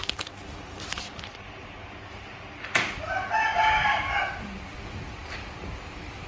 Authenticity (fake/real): real